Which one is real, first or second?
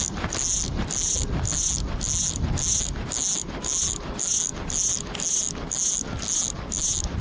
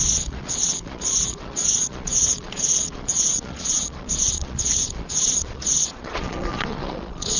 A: first